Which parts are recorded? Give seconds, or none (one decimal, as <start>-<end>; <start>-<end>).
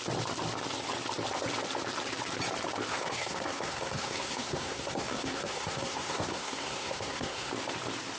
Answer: 0.0-2.9; 7.5-8.2